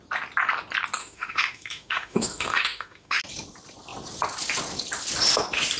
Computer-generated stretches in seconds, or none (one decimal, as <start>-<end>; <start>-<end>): 1.0-3.2